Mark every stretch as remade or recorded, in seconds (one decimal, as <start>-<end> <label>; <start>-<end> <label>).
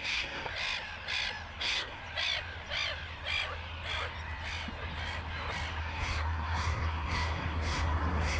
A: 0.0-0.5 remade; 0.5-1.6 recorded; 1.6-2.0 remade; 2.0-5.8 recorded; 5.8-8.4 remade